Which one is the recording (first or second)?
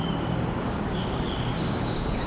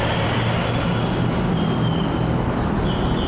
second